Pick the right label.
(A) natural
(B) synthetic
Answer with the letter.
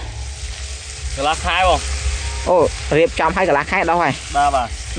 A